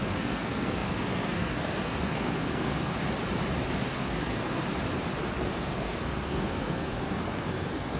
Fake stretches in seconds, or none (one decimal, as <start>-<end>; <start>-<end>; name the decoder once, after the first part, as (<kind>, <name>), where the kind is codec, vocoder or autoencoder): 0.0-2.9 (codec, SNAC); 3.9-4.6; 5.4-8.0

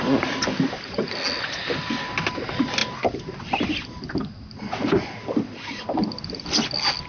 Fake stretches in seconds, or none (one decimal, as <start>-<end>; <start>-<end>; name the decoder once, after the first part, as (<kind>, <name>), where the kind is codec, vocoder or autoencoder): none

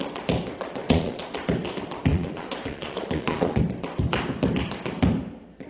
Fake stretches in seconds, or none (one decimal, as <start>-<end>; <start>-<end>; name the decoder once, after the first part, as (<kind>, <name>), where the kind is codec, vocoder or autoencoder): 0.8-1.3 (vocoder, Vocos); 2.1-3.6

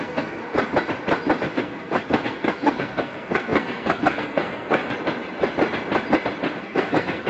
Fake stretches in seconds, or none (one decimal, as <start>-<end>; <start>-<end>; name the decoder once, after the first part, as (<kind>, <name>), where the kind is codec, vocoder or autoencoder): 0.0-0.4 (codec, SNAC); 1.5-4.8; 6.6-7.3

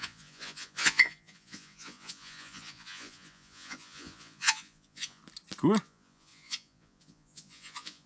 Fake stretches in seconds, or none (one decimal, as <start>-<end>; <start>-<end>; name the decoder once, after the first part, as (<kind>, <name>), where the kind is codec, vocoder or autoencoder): 0.0-5.2 (vocoder, Vocos); 5.8-8.1

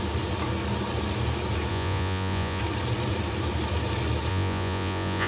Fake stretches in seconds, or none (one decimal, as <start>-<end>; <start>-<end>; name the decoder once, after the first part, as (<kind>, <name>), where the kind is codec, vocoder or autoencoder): 1.7-2.6 (vocoder, Vocos); 4.3-5.3

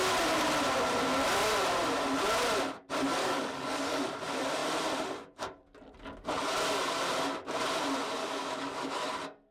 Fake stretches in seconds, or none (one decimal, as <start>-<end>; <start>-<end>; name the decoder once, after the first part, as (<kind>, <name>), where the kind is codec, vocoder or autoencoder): 3.2-4.1 (codec, DAC); 8.2-9.1

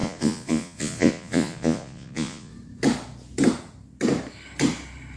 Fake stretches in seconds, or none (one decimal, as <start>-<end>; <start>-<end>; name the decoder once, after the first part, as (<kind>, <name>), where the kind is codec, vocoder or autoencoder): 0.0-2.5 (vocoder, Vocos)